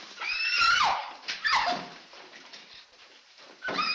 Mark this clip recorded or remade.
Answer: remade